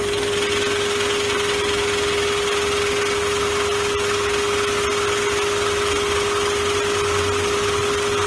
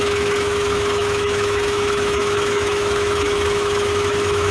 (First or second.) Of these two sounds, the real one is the first